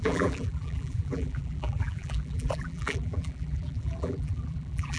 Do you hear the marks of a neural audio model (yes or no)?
yes